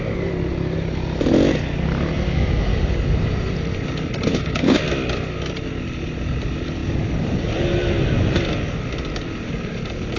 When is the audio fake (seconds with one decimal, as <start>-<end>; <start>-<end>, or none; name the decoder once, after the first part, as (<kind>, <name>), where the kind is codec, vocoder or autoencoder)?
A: 4.3-4.8 (codec, DAC)